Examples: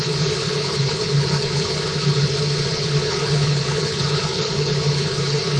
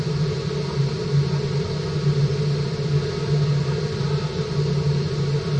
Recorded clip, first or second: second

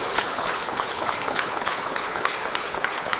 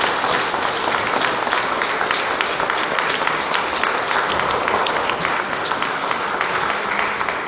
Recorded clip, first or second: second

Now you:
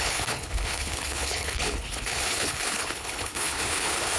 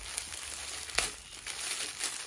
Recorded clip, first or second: second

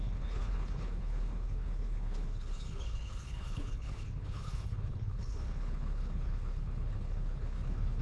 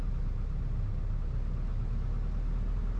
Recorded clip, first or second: second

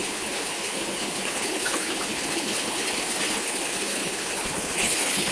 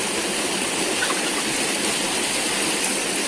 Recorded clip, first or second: second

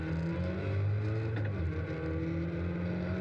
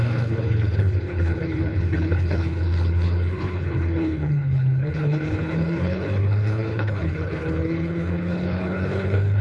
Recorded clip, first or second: first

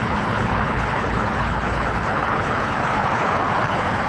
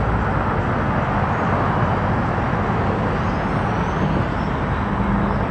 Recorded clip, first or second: second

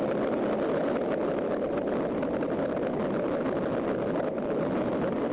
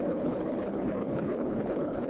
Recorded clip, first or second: first